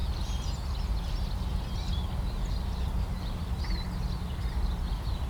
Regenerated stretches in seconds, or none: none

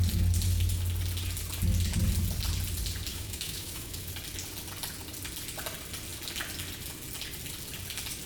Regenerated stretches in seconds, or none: 3.1-4.1 (autoencoder, DAC-VAE)

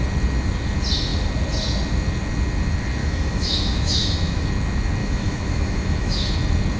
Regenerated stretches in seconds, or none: 3.0-4.5 (autoencoder, DAC-VAE); 5.0-6.3